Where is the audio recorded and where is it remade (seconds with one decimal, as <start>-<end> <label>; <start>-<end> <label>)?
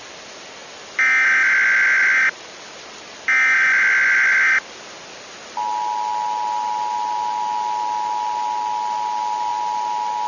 0.0-10.3 recorded